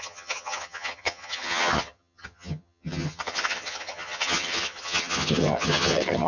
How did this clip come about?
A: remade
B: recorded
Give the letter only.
A